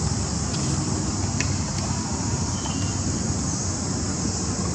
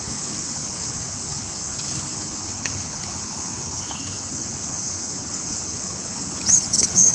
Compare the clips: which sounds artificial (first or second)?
second